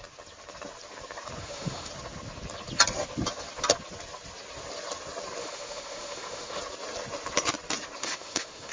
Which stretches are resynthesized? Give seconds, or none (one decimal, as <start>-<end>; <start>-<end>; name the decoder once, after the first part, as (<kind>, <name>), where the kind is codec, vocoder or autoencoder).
1.4-1.9 (autoencoder, DAC-VAE); 5.4-6.6; 8.0-8.7